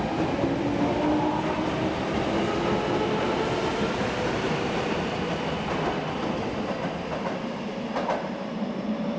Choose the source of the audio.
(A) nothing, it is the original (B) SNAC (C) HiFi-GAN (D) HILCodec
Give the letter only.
A